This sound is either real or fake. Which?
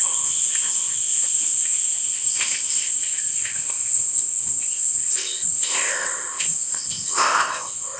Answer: fake